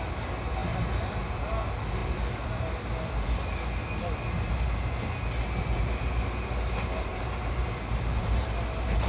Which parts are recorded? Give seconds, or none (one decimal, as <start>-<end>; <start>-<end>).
0.0-9.1